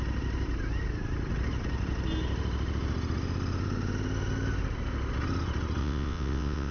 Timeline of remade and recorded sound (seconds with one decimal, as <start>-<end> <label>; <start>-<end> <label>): 0.0-5.8 recorded; 5.8-6.7 remade

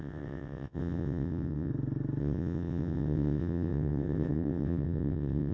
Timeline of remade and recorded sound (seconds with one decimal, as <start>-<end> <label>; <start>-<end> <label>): 0.0-1.7 remade; 1.7-2.2 recorded; 2.2-5.5 remade

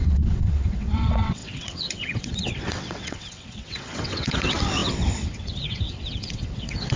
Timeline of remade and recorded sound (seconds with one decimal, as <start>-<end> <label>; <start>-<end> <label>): 0.0-7.0 remade

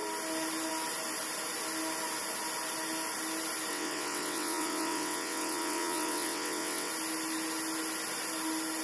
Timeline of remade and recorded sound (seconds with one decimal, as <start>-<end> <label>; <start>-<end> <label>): 0.0-3.7 recorded; 3.7-6.9 remade; 6.9-8.8 recorded

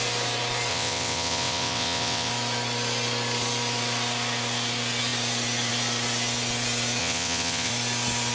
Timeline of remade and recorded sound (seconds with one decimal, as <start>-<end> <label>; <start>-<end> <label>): 0.0-0.7 recorded; 0.7-2.3 remade; 2.3-7.0 recorded; 7.0-7.7 remade; 7.7-8.3 recorded

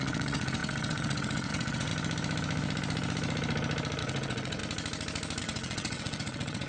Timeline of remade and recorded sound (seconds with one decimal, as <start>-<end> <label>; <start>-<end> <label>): 0.0-1.9 remade; 1.9-4.0 recorded; 4.0-4.6 remade; 4.6-5.4 recorded; 5.4-6.7 remade

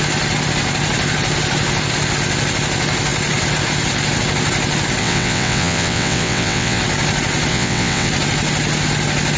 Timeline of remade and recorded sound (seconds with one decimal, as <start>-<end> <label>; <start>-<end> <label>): 0.0-5.0 recorded; 5.0-6.8 remade; 6.8-7.5 recorded; 7.5-8.1 remade; 8.1-9.4 recorded